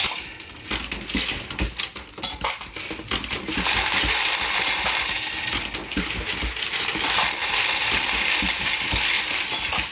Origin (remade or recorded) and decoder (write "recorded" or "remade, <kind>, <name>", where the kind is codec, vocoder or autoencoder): recorded